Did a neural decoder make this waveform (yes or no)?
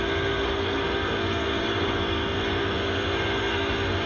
yes